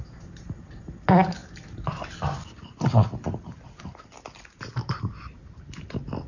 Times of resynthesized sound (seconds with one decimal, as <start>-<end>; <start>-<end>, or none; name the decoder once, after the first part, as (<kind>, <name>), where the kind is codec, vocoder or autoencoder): none

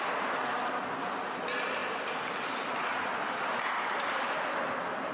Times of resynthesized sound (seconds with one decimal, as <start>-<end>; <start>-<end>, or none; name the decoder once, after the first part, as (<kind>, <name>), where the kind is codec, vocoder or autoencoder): none

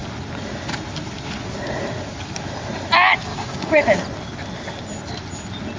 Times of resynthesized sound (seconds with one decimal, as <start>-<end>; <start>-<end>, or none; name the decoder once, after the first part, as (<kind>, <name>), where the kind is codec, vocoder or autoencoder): 3.3-3.8 (codec, DAC)